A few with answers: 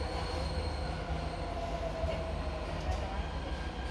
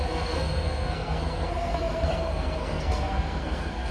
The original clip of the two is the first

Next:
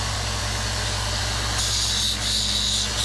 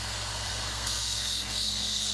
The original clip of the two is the first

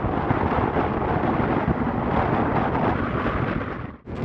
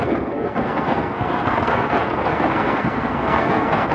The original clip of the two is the first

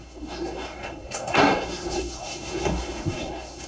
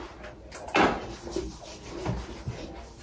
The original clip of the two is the second